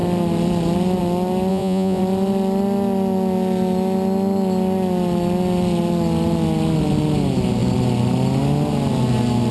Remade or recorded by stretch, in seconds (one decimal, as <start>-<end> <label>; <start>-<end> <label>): 0.0-1.5 recorded; 1.5-2.0 remade; 2.0-9.5 recorded